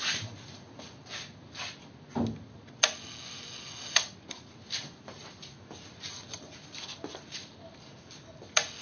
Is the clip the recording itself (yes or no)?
yes